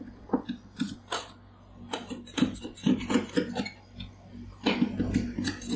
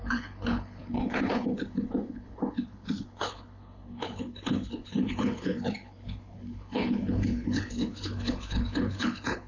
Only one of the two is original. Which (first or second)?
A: first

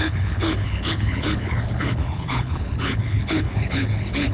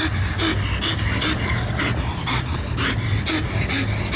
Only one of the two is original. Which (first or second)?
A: second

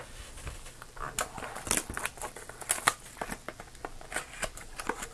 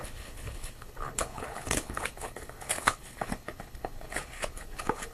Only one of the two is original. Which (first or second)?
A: first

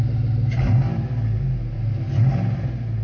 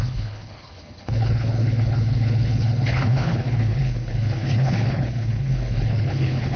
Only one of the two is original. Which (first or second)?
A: first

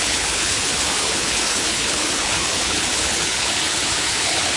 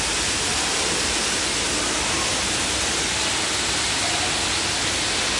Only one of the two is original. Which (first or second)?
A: second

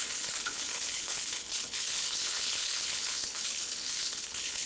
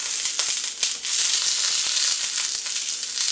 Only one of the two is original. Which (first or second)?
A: second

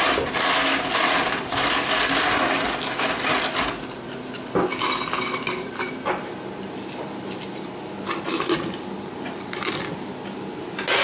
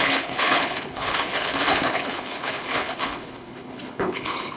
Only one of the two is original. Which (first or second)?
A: first